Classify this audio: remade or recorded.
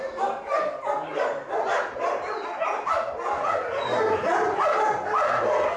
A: recorded